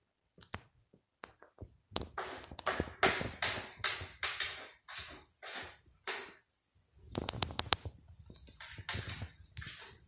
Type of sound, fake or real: real